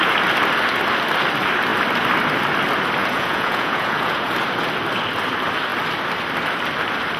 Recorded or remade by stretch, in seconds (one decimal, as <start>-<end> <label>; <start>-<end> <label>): 0.0-3.0 recorded; 3.0-4.3 remade; 4.3-7.2 recorded